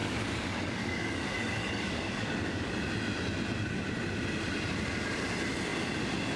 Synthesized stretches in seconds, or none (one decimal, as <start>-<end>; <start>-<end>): 0.0-2.7

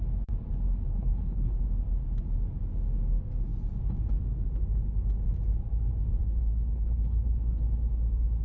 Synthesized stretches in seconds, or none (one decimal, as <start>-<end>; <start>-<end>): 0.9-1.6; 6.2-7.6

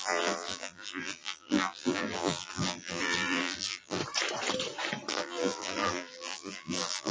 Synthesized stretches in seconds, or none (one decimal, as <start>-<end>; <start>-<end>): 0.0-4.0; 5.1-7.1

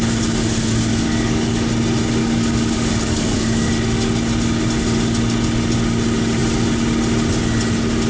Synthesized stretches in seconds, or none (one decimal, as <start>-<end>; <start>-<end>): 0.9-1.7; 2.2-3.7

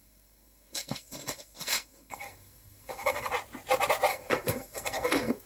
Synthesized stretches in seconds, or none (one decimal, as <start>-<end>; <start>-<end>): 0.0-3.3; 4.1-5.5

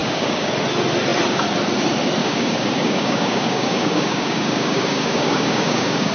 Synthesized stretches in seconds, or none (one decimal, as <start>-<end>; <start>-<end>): 0.0-0.5; 2.2-6.1